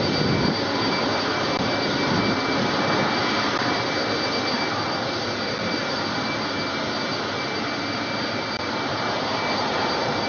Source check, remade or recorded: recorded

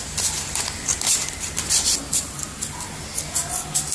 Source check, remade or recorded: recorded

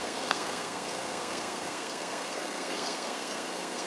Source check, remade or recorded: remade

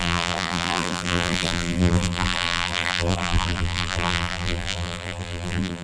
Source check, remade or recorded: remade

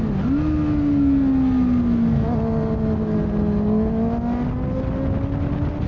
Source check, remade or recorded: recorded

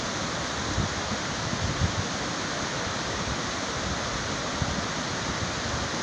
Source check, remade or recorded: recorded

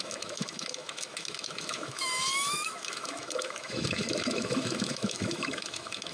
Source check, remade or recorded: remade